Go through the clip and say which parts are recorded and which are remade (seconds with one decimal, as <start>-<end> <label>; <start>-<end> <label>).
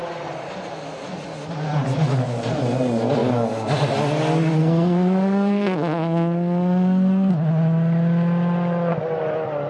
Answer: 0.0-4.6 recorded; 4.6-7.3 remade; 7.3-9.7 recorded